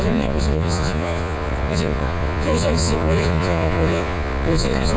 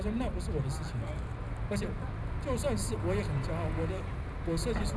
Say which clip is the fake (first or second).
first